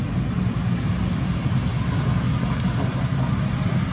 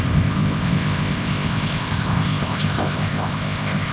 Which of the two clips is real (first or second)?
first